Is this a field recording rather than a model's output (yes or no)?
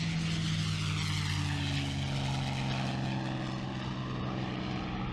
yes